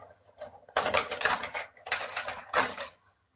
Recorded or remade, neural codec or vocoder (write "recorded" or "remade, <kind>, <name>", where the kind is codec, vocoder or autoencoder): remade, vocoder, HiFi-GAN